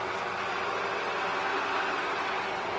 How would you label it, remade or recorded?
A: remade